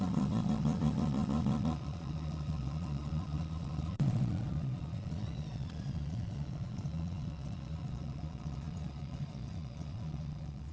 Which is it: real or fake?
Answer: fake